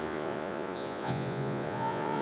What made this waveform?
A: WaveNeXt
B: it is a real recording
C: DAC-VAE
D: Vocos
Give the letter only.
D